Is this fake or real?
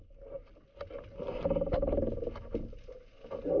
real